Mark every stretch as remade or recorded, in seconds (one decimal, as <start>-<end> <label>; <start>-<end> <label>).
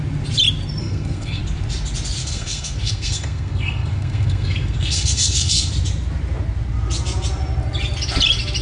0.0-0.8 recorded; 0.8-1.4 remade; 1.4-2.2 recorded; 2.2-5.7 remade; 5.7-8.6 recorded